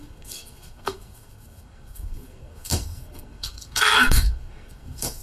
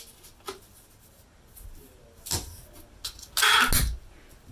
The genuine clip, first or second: second